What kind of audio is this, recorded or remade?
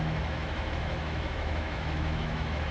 remade